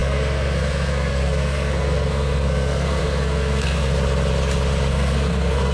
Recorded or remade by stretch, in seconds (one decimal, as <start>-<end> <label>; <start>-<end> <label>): 0.0-3.9 remade; 3.9-4.9 recorded; 4.9-5.7 remade